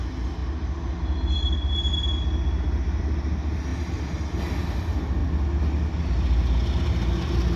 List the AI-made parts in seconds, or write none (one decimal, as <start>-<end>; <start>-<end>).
none